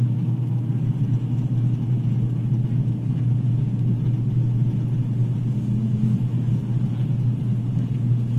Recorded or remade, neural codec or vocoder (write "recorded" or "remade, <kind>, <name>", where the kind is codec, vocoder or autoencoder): recorded